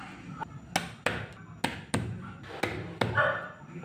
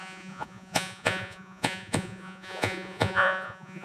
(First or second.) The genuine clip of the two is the first